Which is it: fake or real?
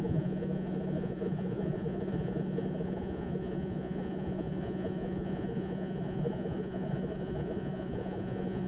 fake